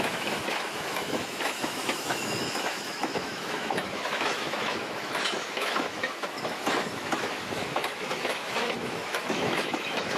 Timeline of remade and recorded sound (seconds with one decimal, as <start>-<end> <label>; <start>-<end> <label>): 0.0-10.2 remade